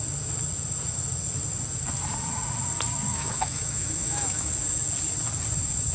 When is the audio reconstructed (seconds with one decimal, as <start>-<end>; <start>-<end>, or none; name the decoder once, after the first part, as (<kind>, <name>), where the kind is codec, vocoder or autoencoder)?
3.1-4.5 (autoencoder, DAC-VAE)